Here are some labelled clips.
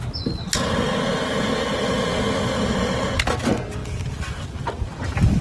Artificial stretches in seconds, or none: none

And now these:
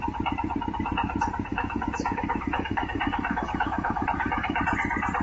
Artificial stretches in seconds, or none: 1.5-4.6 (autoencoder, DAC-VAE)

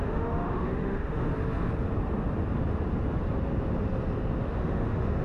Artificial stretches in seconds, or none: 0.0-1.3 (autoencoder, DAC-VAE); 4.4-5.2